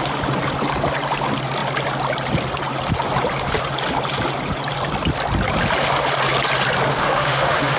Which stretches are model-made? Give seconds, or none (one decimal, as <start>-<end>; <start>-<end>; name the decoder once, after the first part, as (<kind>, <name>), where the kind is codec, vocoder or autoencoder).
6.9-7.8 (autoencoder, DAC-VAE)